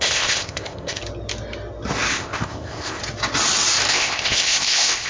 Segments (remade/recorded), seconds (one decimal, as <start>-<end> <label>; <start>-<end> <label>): 0.0-1.0 remade; 1.0-2.1 recorded; 2.1-3.0 remade; 3.0-3.9 recorded; 3.9-5.1 remade